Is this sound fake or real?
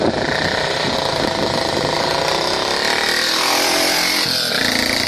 real